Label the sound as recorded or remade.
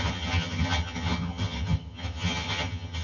remade